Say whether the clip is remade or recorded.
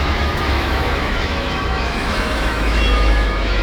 remade